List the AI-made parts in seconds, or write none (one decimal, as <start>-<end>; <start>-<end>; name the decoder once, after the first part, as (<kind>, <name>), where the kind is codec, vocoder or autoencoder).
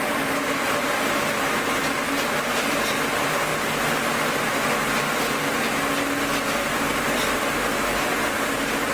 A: none